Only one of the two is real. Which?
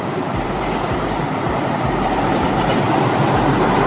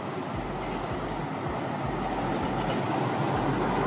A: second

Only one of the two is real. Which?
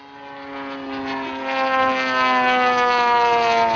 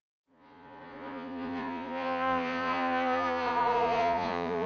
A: first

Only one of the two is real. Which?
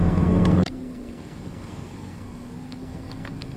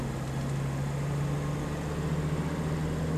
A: second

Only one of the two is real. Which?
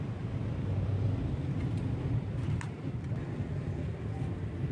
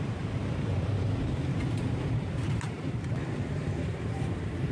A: first